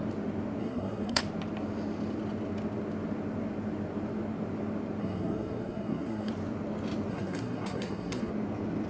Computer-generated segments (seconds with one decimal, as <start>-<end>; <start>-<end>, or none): 0.6-1.2; 5.0-6.3; 7.1-8.3